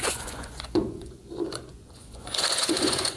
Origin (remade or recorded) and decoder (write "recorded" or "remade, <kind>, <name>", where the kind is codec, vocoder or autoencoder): remade, vocoder, Vocos